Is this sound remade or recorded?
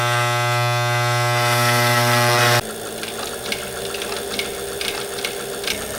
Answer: recorded